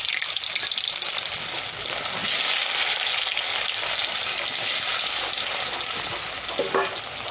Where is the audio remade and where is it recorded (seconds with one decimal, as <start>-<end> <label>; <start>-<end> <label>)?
0.0-7.3 recorded